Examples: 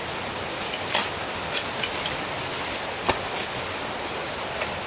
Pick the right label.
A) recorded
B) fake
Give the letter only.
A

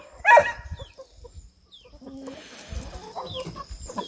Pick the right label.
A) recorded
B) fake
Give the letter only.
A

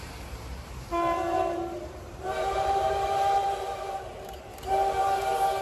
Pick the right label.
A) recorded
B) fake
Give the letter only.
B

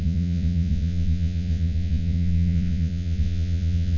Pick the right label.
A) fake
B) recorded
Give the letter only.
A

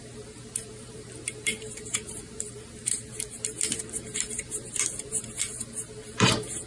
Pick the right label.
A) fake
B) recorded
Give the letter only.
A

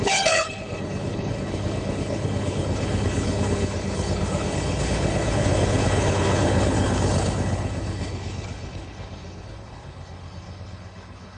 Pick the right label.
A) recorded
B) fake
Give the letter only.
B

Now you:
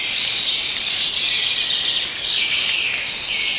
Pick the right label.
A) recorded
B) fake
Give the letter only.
A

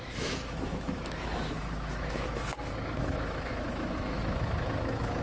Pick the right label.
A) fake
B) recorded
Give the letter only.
A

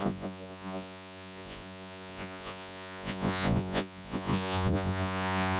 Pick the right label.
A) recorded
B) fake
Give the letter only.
B